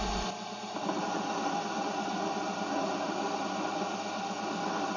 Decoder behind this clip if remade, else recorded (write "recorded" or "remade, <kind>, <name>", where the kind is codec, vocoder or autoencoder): recorded